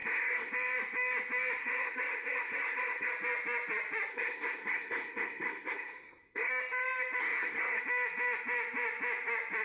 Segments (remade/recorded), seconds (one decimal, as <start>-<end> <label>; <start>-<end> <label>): 0.0-0.5 remade; 0.5-1.6 recorded; 1.6-3.1 remade; 3.1-4.1 recorded; 4.1-6.5 remade; 6.5-7.2 recorded; 7.2-7.8 remade; 7.8-9.6 recorded